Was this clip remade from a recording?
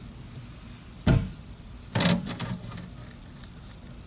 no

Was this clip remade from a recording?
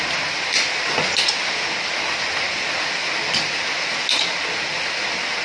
no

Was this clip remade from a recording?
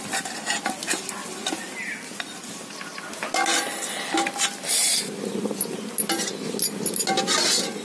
no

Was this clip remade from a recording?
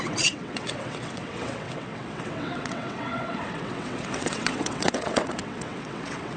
yes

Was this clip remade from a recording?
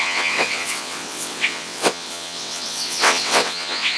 yes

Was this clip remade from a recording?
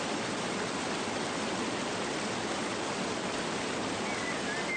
no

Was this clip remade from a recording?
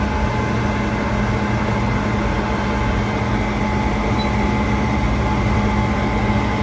no